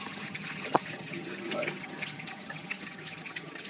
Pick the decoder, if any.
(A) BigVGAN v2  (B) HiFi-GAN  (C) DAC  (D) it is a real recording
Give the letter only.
B